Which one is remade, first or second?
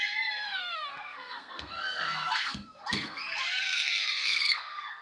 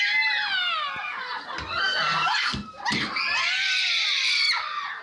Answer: first